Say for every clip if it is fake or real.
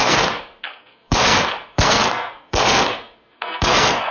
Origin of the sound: fake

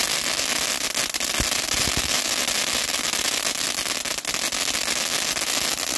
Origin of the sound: real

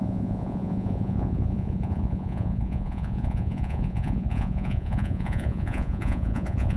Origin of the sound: fake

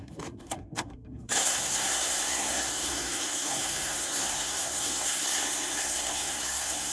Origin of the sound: fake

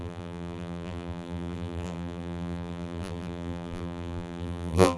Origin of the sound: fake